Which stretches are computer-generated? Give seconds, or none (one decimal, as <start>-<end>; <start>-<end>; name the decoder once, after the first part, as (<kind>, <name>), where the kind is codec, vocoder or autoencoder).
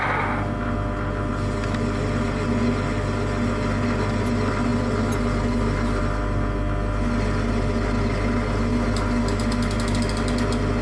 none